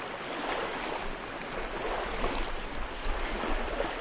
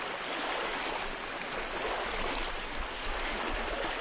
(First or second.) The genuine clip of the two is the first